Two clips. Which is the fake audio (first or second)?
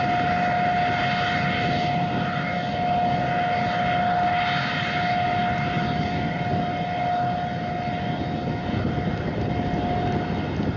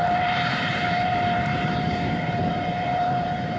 second